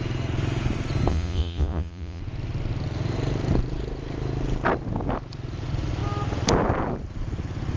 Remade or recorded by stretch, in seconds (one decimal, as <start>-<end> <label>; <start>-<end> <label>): 0.0-1.1 recorded; 1.1-2.2 remade; 2.2-7.8 recorded